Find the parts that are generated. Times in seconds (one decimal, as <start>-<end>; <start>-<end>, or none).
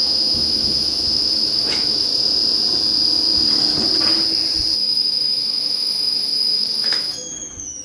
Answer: 0.0-2.1; 4.8-7.8